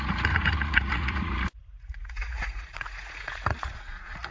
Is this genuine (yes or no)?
no